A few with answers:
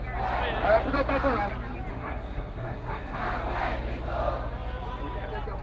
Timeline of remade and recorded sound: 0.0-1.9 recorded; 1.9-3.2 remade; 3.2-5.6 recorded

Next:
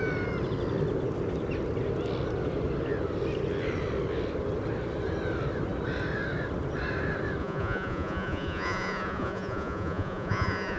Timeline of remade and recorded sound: 0.0-7.4 recorded; 7.4-10.8 remade